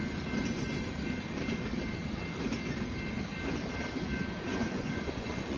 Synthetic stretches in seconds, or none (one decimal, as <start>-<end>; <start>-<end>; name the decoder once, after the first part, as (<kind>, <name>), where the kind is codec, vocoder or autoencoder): 4.5-5.6 (vocoder, Vocos)